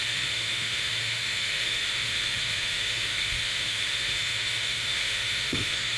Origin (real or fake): fake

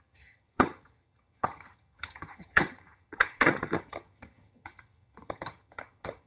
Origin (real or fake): fake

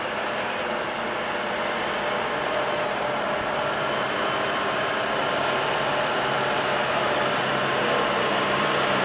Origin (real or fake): fake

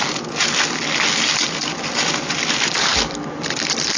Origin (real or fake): real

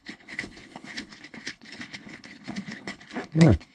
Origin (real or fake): fake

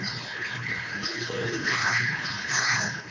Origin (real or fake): fake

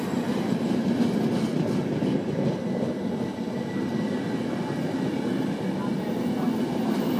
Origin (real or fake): real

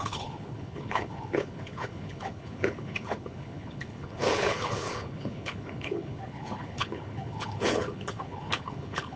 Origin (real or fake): fake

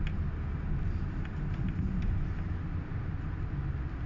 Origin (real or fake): real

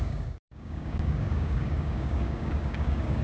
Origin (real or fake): fake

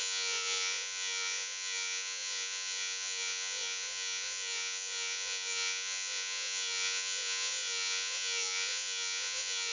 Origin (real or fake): fake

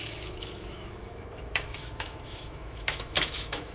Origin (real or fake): fake